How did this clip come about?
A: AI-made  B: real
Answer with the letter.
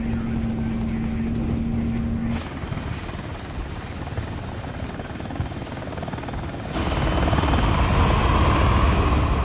B